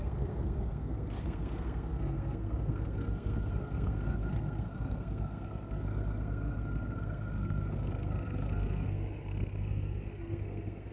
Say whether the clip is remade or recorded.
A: remade